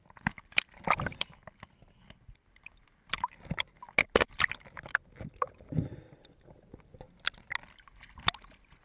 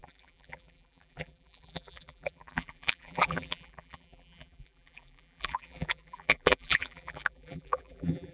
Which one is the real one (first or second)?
first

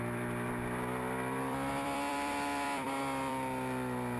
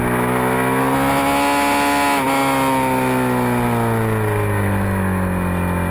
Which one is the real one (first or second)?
second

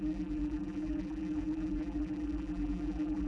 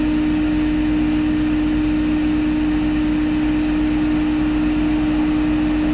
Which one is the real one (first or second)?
second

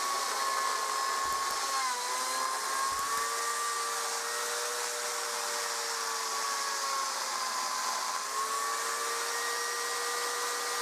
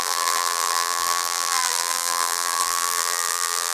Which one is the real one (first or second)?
first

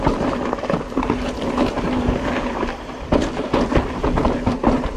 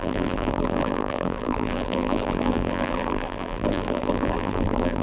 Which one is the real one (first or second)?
first